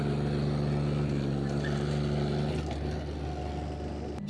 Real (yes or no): yes